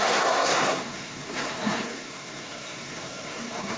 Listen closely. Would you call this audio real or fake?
fake